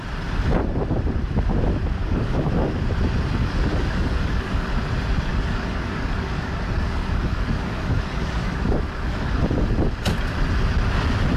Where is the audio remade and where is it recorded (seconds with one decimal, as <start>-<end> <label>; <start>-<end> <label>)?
0.0-2.0 recorded; 2.0-2.5 remade; 2.5-3.4 recorded; 3.4-4.7 remade; 4.7-5.3 recorded; 5.3-9.3 remade; 9.3-11.4 recorded